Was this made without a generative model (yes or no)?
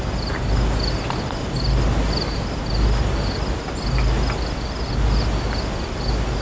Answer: yes